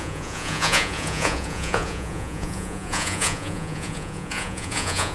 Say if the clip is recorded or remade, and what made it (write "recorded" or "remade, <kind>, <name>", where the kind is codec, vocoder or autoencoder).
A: remade, vocoder, Vocos